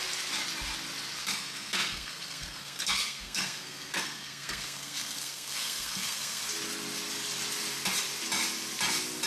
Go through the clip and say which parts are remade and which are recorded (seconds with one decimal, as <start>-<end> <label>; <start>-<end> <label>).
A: 0.0-1.2 recorded; 1.2-6.4 remade; 6.4-9.3 recorded